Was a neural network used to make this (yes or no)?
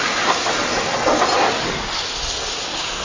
no